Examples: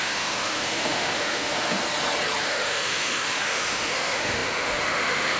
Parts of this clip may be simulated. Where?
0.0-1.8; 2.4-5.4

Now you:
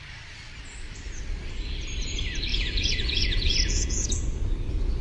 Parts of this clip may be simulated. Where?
2.5-4.2

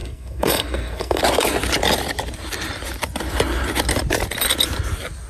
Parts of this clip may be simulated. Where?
0.0-1.2